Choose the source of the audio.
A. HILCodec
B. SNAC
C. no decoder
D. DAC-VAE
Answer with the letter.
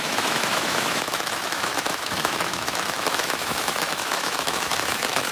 D